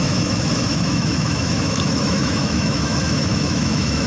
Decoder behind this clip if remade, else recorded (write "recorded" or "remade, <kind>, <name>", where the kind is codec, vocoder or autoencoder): remade, autoencoder, DAC-VAE